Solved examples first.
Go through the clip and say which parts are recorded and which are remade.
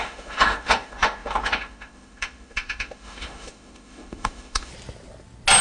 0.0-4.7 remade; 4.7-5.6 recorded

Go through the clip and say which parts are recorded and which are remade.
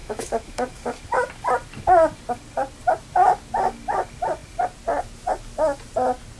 0.0-0.8 remade; 0.8-6.4 recorded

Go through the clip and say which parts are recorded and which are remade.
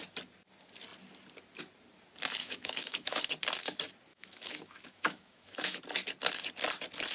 0.0-2.4 recorded; 2.4-3.2 remade; 3.2-4.1 recorded; 4.1-5.8 remade; 5.8-7.1 recorded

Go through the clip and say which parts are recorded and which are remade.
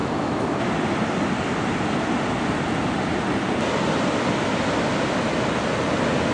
0.0-0.6 remade; 0.6-6.3 recorded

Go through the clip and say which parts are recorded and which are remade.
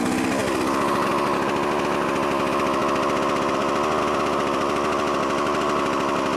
0.0-6.4 recorded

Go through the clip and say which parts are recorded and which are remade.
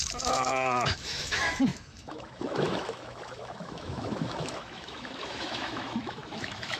0.0-6.8 remade